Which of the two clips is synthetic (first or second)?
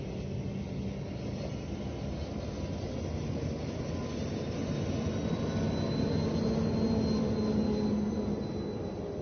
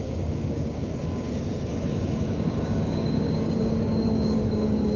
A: second